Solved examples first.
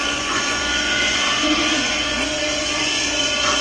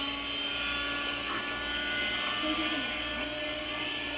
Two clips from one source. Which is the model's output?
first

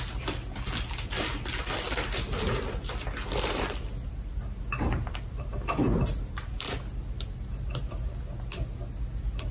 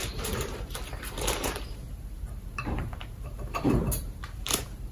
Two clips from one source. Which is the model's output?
second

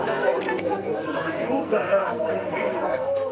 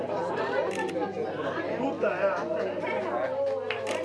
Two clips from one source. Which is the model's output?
first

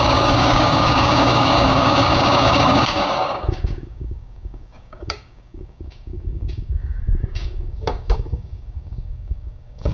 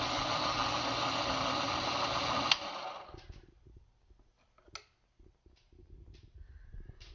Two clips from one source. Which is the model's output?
first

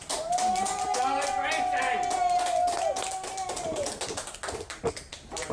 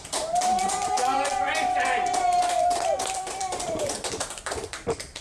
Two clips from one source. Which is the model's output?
second